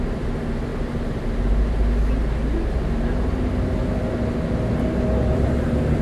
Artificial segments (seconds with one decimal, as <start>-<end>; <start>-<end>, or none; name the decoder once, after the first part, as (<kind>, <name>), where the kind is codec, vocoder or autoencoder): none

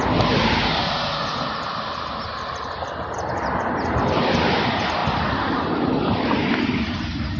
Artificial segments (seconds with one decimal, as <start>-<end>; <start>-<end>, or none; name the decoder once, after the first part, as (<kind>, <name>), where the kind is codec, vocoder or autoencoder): none

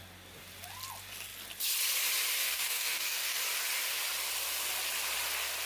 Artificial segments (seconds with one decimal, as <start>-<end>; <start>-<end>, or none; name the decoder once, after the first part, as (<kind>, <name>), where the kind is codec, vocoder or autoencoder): 2.4-3.4 (codec, DAC)

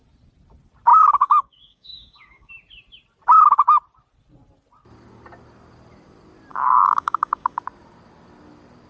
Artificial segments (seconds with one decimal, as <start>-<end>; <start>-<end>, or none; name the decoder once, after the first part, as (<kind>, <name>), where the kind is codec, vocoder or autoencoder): 0.9-2.5 (codec, DAC); 6.5-7.6

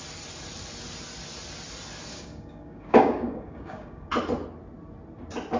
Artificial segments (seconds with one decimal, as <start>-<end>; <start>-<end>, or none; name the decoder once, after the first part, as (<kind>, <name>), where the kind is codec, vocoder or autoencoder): 2.1-4.1 (codec, DAC)